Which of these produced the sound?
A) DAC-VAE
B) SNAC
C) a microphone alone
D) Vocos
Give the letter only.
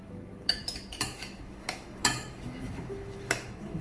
A